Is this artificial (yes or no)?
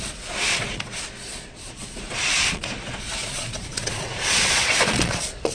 yes